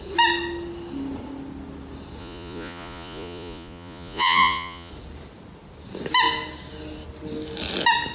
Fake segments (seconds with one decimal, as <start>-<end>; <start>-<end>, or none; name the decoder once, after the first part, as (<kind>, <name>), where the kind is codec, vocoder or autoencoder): 2.2-4.9 (vocoder, Vocos)